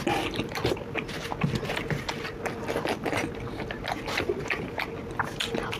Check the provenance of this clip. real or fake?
real